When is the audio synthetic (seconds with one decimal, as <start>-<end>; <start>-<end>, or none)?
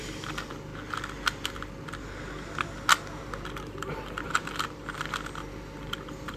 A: 0.0-0.7; 3.7-6.4